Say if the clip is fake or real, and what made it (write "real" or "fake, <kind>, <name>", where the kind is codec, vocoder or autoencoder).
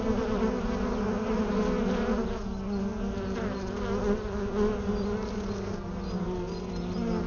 real